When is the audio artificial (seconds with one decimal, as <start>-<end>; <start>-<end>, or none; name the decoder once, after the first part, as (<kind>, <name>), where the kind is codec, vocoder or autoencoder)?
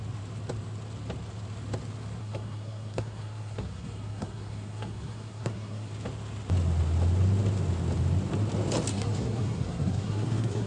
2.2-5.9 (codec, SNAC); 8.9-10.7